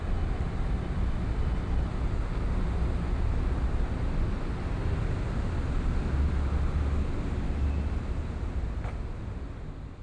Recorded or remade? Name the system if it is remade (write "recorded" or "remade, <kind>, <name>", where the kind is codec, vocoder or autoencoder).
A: recorded